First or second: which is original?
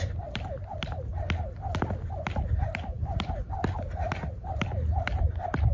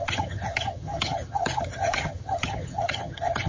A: first